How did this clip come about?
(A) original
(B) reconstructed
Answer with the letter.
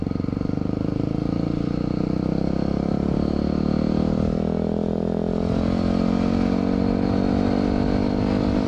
A